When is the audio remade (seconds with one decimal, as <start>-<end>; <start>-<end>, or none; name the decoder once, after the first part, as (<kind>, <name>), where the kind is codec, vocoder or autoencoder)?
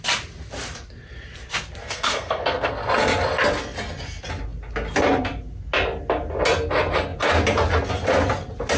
1.8-2.7 (codec, SNAC)